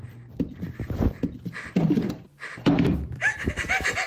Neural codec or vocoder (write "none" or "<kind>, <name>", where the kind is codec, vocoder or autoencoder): none